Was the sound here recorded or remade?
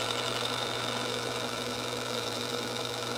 remade